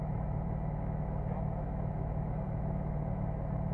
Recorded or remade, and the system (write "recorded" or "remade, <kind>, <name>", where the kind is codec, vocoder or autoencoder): remade, autoencoder, DAC-VAE